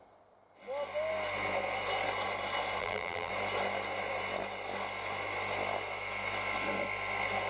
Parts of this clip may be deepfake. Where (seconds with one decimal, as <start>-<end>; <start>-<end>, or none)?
2.8-3.3